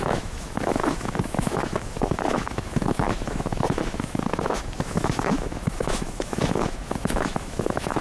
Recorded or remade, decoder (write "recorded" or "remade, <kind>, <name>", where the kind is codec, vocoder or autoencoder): remade, autoencoder, DAC-VAE